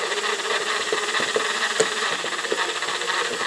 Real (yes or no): no